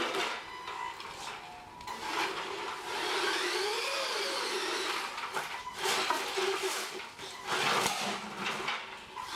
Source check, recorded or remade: recorded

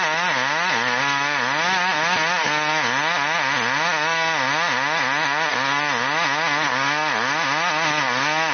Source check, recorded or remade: recorded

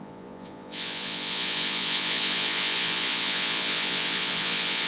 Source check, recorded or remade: remade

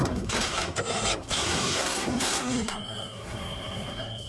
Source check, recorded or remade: remade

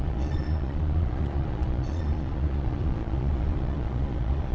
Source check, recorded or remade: remade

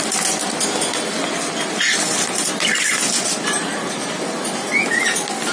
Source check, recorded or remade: recorded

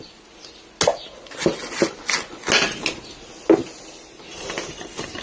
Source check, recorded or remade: recorded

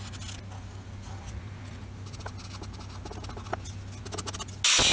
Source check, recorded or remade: recorded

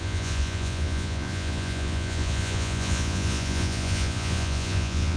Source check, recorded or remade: remade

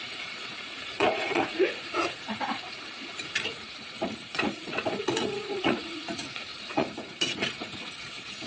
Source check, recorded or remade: remade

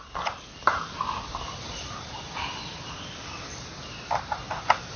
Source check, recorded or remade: remade